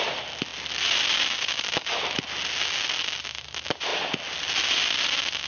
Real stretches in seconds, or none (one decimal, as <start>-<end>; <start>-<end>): 0.0-5.5